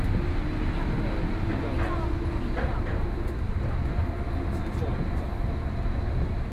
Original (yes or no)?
yes